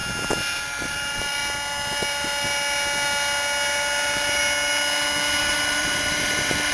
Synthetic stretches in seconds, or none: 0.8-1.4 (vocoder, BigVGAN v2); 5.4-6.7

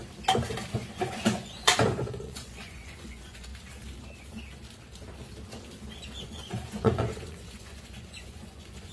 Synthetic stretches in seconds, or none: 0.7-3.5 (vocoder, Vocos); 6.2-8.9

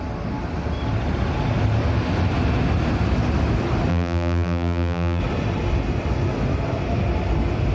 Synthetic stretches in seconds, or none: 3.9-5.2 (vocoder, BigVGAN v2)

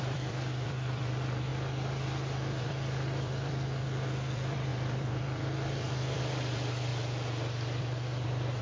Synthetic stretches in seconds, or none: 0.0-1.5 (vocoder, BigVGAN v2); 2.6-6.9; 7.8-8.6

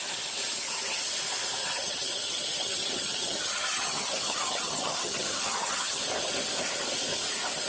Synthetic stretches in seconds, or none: 1.6-6.0 (vocoder, HiFi-GAN)

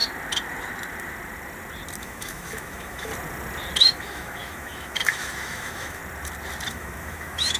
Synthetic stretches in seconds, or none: 2.0-3.1 (autoencoder, DAC-VAE); 3.8-6.0; 6.7-7.6

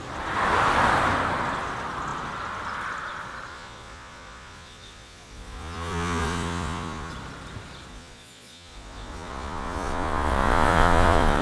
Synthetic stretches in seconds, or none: 3.5-7.1 (vocoder, Vocos); 7.9-11.4

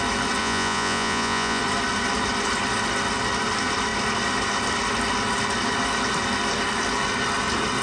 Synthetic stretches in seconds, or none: 0.4-1.6 (vocoder, Vocos)